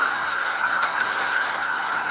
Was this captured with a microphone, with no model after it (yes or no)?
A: no